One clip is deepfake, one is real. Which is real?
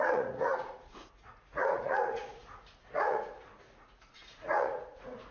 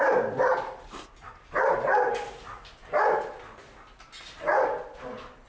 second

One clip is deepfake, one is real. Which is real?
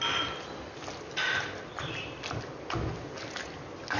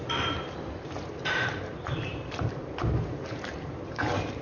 first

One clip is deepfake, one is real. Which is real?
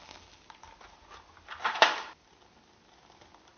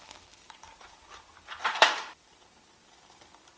first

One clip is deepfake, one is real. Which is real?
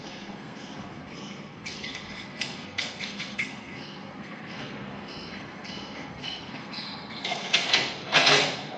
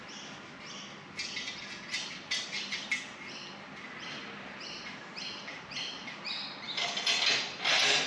second